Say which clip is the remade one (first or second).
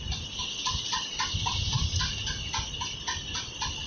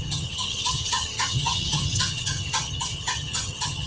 second